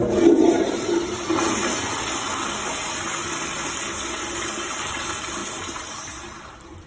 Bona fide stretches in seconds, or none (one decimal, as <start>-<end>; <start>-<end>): 1.6-4.1